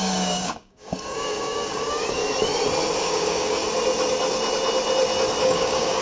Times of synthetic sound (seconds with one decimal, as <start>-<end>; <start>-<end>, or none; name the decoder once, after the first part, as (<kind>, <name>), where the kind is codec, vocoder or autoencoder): 0.0-2.2 (codec, DAC); 3.0-3.6; 5.4-6.0

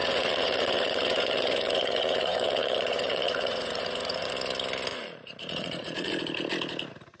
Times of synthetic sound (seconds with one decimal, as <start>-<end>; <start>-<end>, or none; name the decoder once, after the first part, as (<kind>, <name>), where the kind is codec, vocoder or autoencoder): 0.0-4.3 (vocoder, Vocos); 4.9-6.1

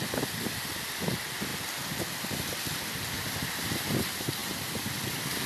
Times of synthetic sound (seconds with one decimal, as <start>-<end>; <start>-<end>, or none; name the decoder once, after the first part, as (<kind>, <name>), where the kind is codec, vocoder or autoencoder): none

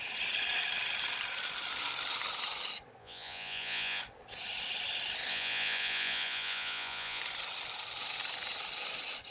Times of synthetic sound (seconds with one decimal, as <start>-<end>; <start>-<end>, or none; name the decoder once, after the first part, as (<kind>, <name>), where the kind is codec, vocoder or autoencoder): 3.0-4.0 (vocoder, Vocos); 5.3-7.2

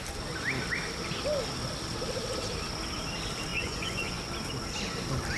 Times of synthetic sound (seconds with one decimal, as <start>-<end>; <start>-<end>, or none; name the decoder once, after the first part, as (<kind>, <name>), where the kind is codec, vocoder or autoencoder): 3.5-4.2 (vocoder, Vocos)

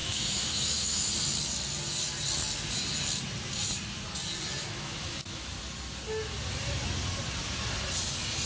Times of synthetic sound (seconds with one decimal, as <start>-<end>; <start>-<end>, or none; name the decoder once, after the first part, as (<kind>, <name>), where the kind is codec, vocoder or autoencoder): 0.0-1.1 (autoencoder, DAC-VAE); 4.6-5.6